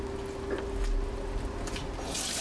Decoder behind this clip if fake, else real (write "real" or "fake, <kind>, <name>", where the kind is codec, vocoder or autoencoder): real